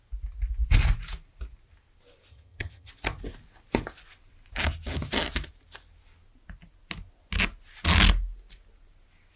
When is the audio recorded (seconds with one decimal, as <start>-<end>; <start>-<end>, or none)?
0.0-2.3; 2.9-9.4